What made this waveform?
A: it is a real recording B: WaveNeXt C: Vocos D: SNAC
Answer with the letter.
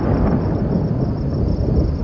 A